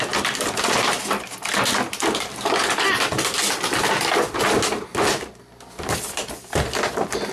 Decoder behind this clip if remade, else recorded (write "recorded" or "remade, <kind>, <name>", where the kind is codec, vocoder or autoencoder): recorded